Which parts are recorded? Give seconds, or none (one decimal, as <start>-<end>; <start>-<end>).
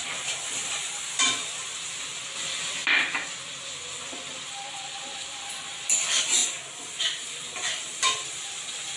2.8-3.7; 6.4-7.0